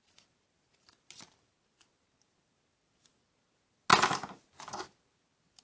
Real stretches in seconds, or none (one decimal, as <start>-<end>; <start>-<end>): 0.0-5.6